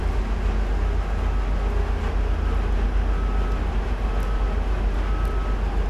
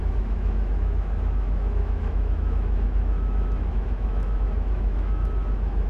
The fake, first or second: second